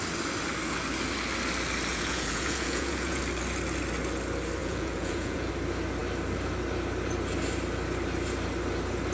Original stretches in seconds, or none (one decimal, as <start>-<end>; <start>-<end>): 0.0-1.9; 3.2-4.6; 5.5-9.1